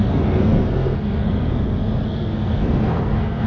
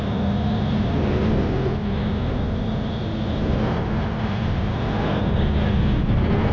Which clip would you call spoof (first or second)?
first